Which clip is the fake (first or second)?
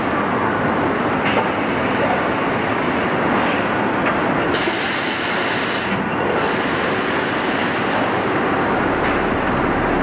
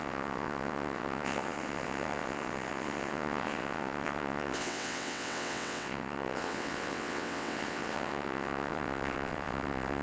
second